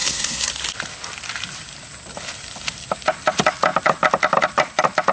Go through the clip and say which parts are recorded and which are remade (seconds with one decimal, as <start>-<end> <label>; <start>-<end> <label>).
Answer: 0.0-0.5 remade; 0.5-5.1 recorded